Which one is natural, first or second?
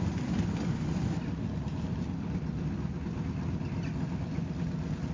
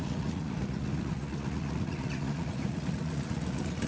first